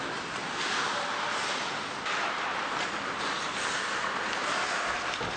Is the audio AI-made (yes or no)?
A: no